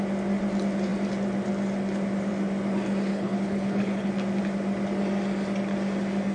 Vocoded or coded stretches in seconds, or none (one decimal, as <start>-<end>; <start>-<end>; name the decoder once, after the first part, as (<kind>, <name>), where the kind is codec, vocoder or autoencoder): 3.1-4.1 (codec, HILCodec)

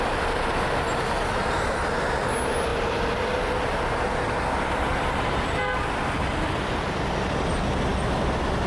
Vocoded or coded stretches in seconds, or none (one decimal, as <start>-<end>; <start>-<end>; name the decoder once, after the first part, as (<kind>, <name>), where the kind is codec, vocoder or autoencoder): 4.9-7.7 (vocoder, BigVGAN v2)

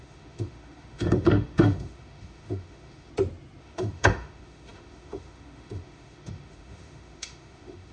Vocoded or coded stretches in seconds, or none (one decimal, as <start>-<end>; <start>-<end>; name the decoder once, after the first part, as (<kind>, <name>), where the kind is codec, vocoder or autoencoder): 0.0-3.1 (autoencoder, DAC-VAE); 3.6-7.9

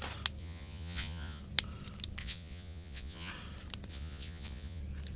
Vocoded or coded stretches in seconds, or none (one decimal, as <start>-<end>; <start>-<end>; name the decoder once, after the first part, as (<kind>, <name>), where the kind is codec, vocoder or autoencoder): 0.4-1.4 (vocoder, Vocos); 2.2-3.3; 3.9-4.8

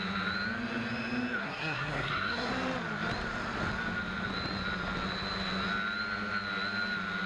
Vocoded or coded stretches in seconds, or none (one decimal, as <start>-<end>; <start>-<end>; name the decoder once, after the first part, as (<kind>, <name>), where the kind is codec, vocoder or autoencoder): 1.4-2.5 (codec, SNAC)

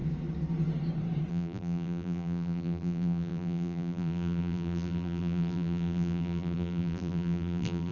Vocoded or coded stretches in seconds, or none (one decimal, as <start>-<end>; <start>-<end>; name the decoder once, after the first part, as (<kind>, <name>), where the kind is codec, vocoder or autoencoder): 1.3-7.9 (vocoder, BigVGAN v2)

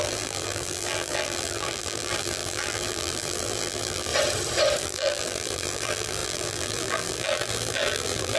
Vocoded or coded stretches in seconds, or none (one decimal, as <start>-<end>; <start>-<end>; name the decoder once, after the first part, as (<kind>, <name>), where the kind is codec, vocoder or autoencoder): 0.0-4.1 (vocoder, BigVGAN v2); 4.8-8.4

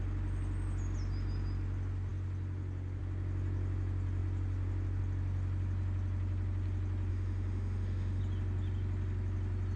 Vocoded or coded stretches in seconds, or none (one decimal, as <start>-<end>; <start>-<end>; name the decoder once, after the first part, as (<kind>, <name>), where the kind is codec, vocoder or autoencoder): 7.1-8.2 (autoencoder, DAC-VAE)